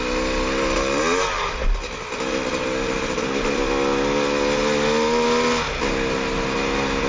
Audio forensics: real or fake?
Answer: real